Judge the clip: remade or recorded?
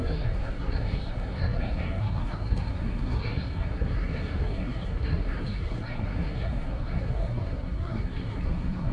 remade